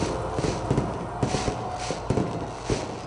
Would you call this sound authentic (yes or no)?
yes